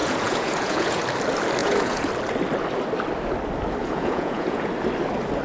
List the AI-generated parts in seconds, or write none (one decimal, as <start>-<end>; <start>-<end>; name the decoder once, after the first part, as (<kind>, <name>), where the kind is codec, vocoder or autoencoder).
0.0-1.0 (vocoder, Vocos); 1.6-2.1; 3.8-4.7